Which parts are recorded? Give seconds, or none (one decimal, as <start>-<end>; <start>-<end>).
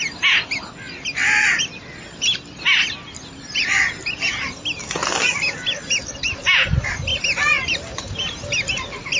0.0-9.2